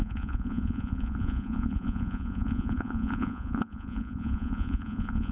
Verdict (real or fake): fake